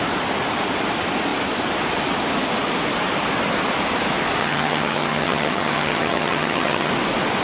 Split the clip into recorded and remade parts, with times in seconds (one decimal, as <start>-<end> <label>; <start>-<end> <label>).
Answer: 0.0-4.4 recorded; 4.4-6.9 remade; 6.9-7.4 recorded